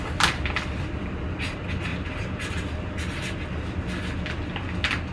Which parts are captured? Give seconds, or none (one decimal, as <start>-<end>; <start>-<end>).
0.0-1.9; 3.8-5.1